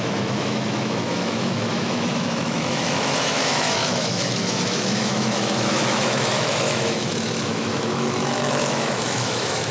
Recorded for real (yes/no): no